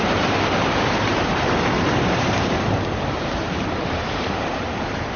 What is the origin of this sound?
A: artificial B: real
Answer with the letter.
A